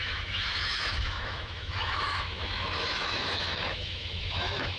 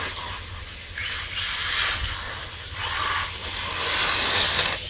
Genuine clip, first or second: second